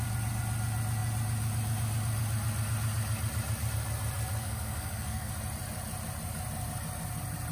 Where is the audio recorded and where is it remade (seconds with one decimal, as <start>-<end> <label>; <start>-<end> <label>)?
0.0-4.4 recorded; 4.4-5.3 remade; 5.3-7.5 recorded